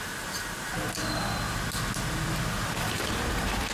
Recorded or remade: recorded